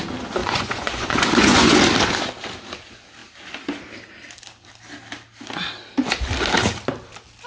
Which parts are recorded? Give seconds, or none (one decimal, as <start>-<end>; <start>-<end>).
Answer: 0.0-0.4; 1.8-7.5